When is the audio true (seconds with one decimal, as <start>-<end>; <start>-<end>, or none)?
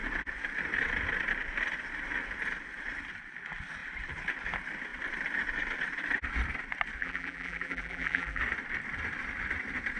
0.0-7.0; 8.4-10.0